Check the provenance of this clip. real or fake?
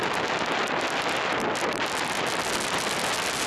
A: real